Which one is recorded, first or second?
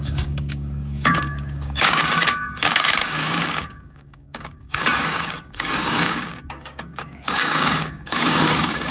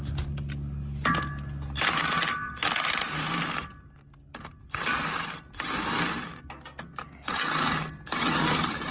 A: second